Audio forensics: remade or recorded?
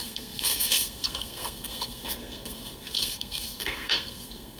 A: remade